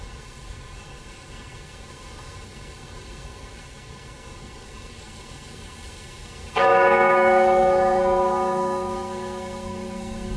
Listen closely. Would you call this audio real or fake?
fake